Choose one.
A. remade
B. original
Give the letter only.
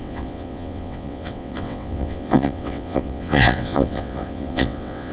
A